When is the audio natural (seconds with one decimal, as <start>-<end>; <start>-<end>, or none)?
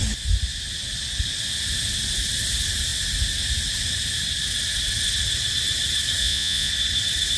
0.0-6.2; 6.7-7.4